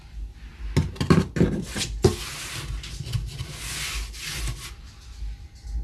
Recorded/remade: recorded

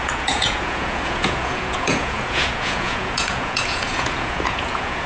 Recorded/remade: remade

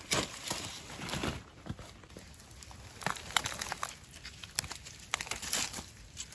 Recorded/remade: recorded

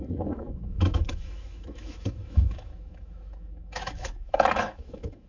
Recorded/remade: remade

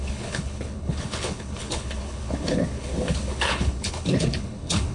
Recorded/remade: remade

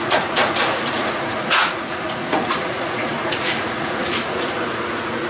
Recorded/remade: remade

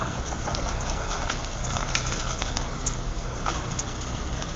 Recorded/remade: remade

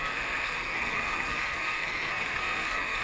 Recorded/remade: remade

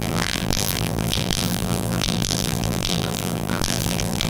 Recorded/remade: remade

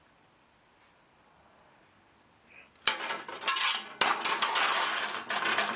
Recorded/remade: recorded